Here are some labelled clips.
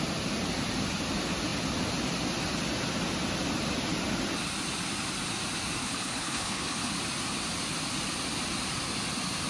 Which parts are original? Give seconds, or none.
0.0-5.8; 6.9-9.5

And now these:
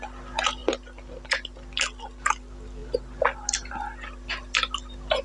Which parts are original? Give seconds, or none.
0.0-5.2

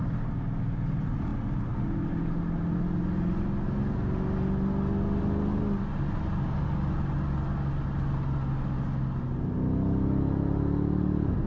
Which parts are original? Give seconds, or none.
0.0-11.5